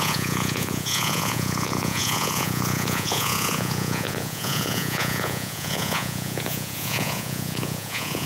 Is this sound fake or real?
fake